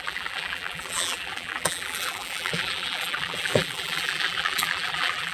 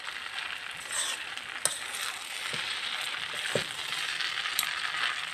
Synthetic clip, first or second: first